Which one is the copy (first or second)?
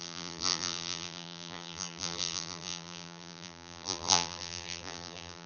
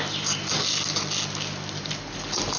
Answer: first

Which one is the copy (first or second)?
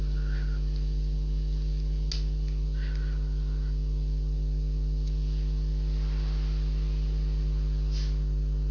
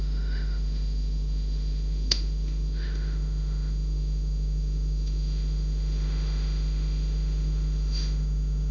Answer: second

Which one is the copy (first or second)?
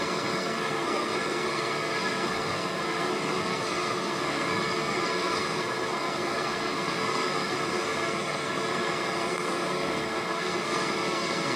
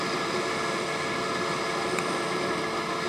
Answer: first